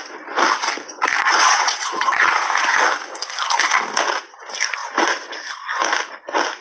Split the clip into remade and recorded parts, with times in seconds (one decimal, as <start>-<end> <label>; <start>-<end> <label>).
0.0-1.2 recorded; 1.2-2.4 remade; 2.4-6.6 recorded